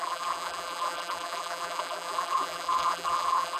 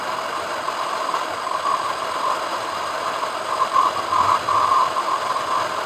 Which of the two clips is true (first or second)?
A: second